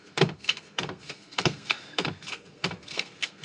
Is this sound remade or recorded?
remade